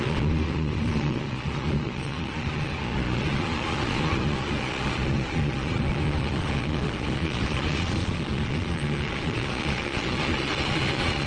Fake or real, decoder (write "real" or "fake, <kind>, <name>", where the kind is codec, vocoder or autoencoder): fake, vocoder, Vocos